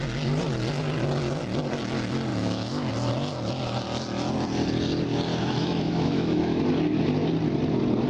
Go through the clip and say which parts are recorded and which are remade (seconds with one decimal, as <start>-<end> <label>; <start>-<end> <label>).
0.0-2.3 recorded; 2.3-2.9 remade; 2.9-5.3 recorded; 5.3-6.6 remade; 6.6-8.1 recorded